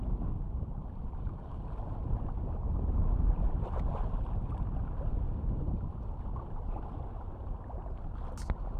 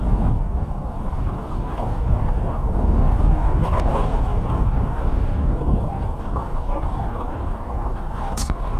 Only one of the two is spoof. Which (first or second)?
second